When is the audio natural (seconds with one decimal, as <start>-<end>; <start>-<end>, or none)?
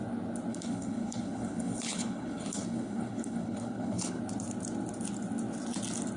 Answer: 0.0-0.5; 4.2-6.2